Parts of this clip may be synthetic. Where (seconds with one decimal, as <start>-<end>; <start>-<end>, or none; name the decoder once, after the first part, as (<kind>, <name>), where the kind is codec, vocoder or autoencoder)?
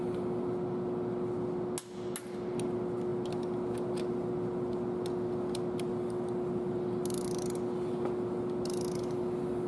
none